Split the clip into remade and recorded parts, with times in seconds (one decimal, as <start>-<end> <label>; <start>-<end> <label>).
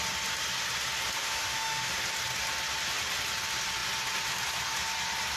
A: 0.0-1.2 recorded; 1.2-1.9 remade; 1.9-5.4 recorded